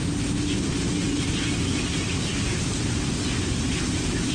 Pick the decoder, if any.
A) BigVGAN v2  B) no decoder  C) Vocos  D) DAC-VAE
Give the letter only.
B